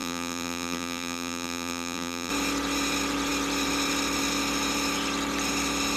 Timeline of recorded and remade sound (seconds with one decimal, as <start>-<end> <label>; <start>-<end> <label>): 0.0-2.3 remade; 2.3-6.0 recorded

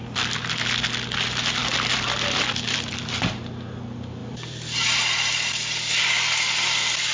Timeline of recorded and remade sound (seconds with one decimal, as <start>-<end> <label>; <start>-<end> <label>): 0.0-1.6 recorded; 1.6-3.3 remade; 3.3-4.2 recorded; 4.2-5.3 remade; 5.3-7.1 recorded

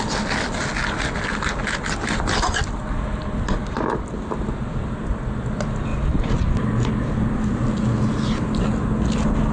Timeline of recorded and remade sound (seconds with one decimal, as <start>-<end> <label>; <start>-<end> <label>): 0.0-9.5 recorded

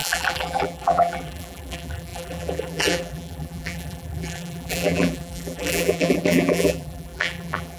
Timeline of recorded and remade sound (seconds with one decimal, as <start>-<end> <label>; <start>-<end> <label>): 0.0-7.8 remade

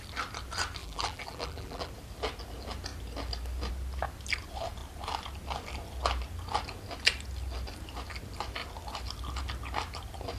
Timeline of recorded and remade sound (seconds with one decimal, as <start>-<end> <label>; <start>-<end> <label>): 0.0-0.8 recorded; 0.8-1.9 remade; 1.9-10.4 recorded

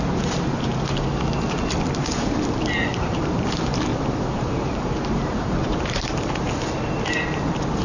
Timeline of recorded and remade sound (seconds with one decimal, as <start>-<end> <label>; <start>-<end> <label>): 0.0-0.7 recorded; 0.7-1.2 remade; 1.2-2.9 recorded; 2.9-3.5 remade; 3.5-3.9 recorded; 3.9-6.5 remade; 6.5-7.8 recorded

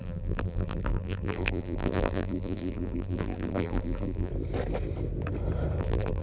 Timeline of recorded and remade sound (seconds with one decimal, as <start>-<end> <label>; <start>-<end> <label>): 0.0-4.3 remade; 4.3-5.8 recorded; 5.8-6.2 remade

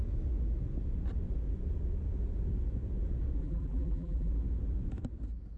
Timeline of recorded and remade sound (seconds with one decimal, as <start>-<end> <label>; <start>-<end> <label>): 0.0-3.4 recorded; 3.4-4.3 remade; 4.3-5.6 recorded